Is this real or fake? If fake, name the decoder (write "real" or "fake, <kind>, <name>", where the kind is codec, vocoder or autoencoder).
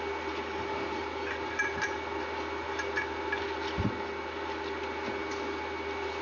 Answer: real